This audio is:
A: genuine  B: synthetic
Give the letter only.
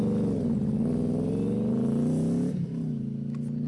A